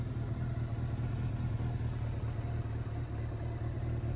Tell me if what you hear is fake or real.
real